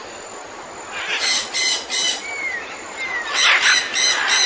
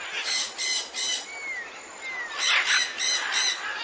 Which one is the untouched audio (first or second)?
second